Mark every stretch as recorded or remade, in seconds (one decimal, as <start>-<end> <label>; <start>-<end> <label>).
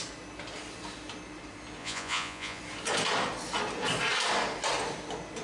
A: 0.0-1.8 recorded; 1.8-2.6 remade; 2.6-5.4 recorded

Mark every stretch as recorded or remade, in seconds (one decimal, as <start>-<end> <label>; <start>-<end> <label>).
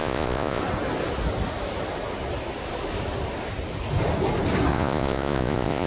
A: 0.0-0.6 remade; 0.6-4.7 recorded; 4.7-5.9 remade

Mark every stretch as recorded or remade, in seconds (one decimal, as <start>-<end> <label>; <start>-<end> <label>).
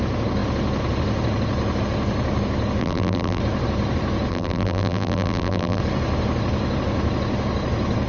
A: 0.0-2.8 recorded; 2.8-3.4 remade; 3.4-4.3 recorded; 4.3-5.8 remade; 5.8-8.1 recorded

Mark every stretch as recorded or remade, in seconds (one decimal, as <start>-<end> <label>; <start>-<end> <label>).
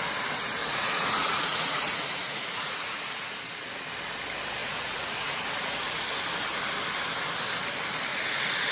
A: 0.0-0.6 recorded; 0.6-3.4 remade; 3.4-4.6 recorded; 4.6-6.0 remade; 6.0-8.1 recorded; 8.1-8.7 remade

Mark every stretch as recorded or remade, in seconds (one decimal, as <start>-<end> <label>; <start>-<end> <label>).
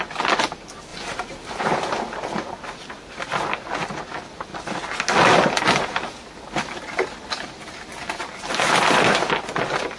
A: 0.0-10.0 recorded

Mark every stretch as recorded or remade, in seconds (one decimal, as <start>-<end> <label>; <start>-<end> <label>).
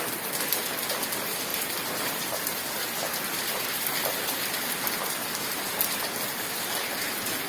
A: 0.0-1.5 recorded; 1.5-4.8 remade; 4.8-7.5 recorded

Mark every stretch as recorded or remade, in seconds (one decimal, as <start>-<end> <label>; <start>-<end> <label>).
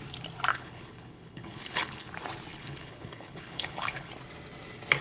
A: 0.0-0.5 recorded; 0.5-2.1 remade; 2.1-2.5 recorded; 2.5-4.1 remade; 4.1-5.0 recorded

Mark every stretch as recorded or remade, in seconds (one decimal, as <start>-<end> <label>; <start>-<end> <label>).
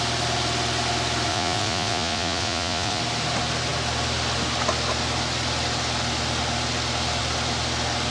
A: 0.0-1.3 recorded; 1.3-3.0 remade; 3.0-8.1 recorded